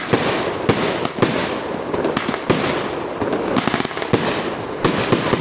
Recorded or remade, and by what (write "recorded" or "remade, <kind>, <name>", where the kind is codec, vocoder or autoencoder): recorded